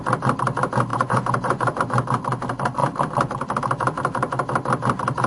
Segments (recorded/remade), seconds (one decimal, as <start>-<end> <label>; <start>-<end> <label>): 0.0-0.9 recorded; 0.9-1.8 remade; 1.8-5.3 recorded